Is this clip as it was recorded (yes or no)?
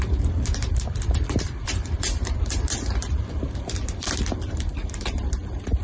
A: no